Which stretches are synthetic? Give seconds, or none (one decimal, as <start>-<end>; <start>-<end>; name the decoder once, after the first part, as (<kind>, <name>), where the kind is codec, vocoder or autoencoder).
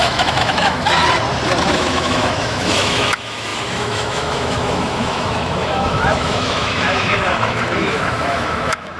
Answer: 0.0-1.0 (autoencoder, DAC-VAE); 1.6-9.0